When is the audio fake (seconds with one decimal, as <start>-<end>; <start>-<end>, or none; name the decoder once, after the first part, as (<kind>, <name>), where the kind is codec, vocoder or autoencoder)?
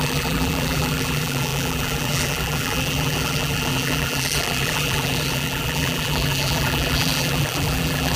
0.0-8.2 (vocoder, BigVGAN v2)